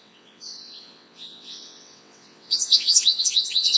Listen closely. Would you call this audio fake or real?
fake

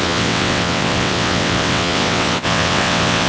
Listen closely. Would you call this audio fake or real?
fake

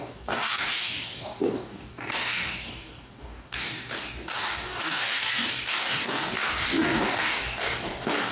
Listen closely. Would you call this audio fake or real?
fake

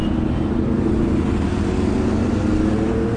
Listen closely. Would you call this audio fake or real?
real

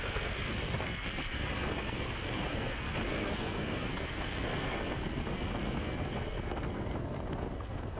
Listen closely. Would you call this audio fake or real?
fake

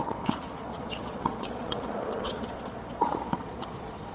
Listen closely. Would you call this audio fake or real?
fake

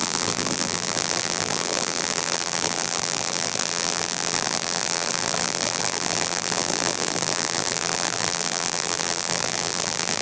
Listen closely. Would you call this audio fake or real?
fake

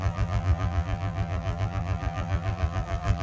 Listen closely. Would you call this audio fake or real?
fake